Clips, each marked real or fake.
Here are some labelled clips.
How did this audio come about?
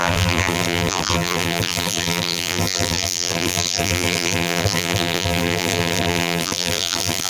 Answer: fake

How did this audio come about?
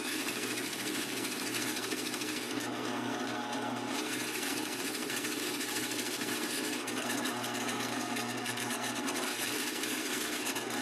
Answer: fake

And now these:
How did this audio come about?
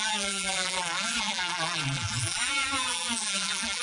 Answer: fake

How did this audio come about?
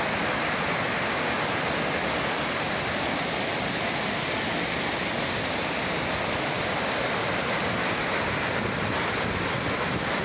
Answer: real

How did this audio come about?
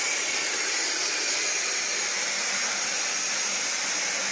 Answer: real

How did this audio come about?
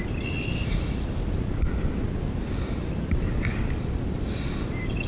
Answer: fake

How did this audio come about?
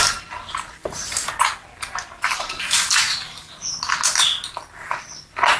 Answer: real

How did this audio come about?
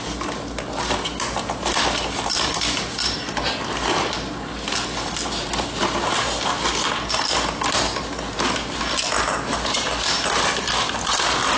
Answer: real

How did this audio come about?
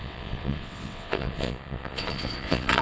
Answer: fake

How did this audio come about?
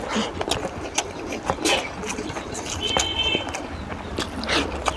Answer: real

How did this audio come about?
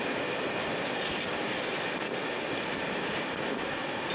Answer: real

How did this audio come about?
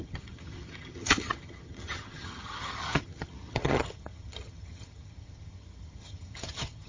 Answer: fake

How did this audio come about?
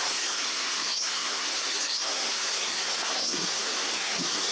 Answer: fake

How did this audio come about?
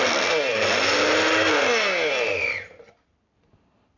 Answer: real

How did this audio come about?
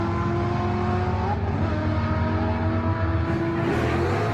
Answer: real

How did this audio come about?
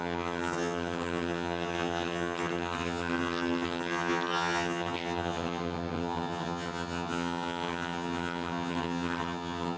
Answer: fake